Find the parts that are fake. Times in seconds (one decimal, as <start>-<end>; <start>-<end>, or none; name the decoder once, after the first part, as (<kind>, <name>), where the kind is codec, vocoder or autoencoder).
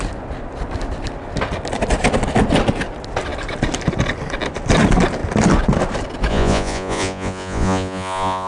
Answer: 6.3-8.5 (vocoder, Vocos)